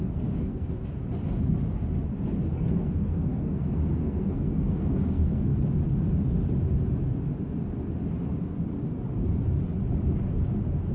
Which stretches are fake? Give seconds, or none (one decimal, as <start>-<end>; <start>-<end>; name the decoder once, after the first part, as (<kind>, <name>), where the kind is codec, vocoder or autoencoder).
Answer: 0.0-0.8 (codec, SNAC); 2.5-5.5